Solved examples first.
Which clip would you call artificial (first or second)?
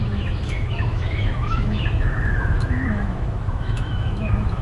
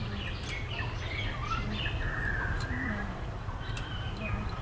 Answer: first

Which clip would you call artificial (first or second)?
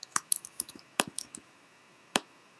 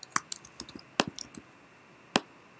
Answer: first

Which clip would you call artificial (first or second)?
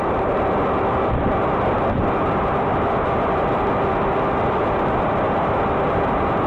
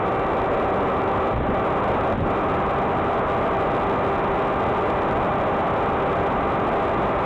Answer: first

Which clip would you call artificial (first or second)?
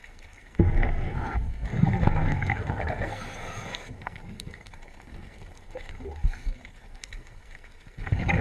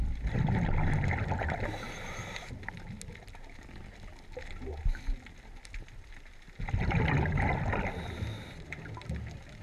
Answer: first